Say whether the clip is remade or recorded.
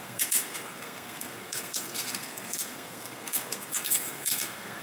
remade